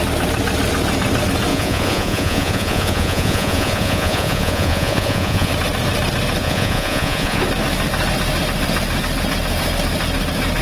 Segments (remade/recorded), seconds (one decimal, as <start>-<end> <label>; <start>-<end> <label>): 0.0-1.5 recorded; 1.5-5.5 remade; 5.5-6.4 recorded; 6.4-7.4 remade; 7.4-10.6 recorded